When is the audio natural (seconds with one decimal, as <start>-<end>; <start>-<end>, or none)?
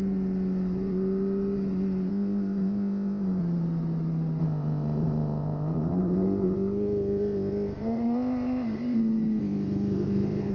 0.0-2.1; 3.4-4.4; 9.0-9.4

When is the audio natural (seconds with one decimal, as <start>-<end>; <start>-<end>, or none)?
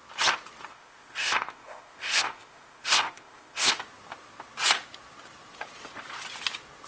0.0-0.7; 3.7-6.9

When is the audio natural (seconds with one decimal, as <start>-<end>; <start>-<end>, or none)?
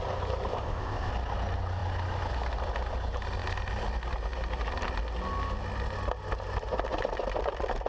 0.0-0.5; 1.1-7.9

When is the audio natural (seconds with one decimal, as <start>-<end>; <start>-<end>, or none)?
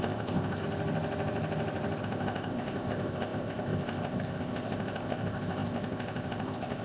0.6-2.0